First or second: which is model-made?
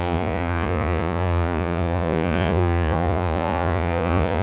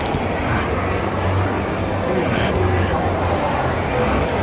first